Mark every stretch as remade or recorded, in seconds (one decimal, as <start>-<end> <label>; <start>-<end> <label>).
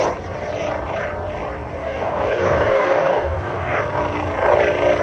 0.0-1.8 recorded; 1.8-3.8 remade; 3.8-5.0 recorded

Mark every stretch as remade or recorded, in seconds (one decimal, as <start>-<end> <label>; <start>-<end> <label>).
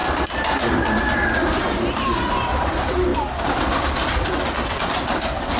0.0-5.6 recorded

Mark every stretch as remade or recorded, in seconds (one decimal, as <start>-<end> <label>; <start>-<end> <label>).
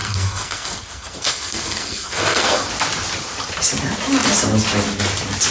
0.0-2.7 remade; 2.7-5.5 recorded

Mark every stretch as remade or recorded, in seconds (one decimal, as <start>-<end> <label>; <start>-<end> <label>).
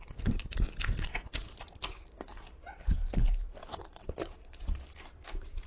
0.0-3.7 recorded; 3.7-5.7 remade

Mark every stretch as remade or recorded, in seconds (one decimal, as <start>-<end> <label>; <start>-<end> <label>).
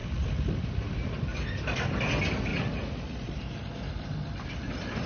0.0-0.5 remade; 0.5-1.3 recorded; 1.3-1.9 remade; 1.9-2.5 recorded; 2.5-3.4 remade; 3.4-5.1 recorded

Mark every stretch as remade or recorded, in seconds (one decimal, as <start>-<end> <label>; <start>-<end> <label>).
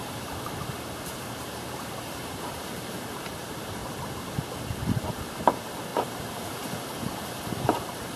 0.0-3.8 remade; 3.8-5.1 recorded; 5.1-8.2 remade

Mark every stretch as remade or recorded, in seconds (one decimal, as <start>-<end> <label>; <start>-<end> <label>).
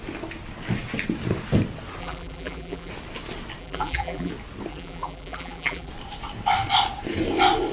0.0-2.0 recorded; 2.0-2.9 remade; 2.9-3.6 recorded; 3.6-4.3 remade; 4.3-4.7 recorded; 4.7-5.9 remade; 5.9-7.7 recorded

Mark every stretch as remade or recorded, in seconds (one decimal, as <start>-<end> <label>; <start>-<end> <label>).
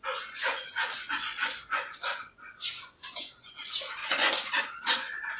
0.0-5.4 remade